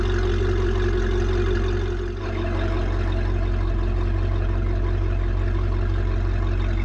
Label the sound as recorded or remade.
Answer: recorded